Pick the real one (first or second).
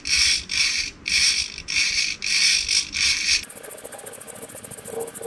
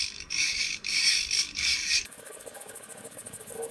first